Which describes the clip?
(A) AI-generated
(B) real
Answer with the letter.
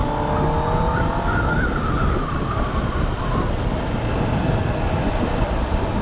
B